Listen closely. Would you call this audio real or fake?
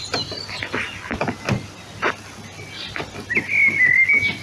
real